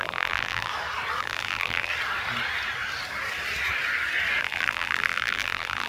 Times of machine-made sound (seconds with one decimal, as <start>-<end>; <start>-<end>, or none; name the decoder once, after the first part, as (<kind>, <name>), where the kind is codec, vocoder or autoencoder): 0.0-0.7 (vocoder, BigVGAN v2); 1.2-1.9; 4.4-5.9